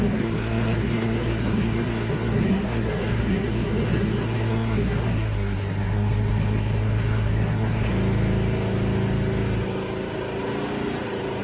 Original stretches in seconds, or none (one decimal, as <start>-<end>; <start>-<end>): 7.9-11.4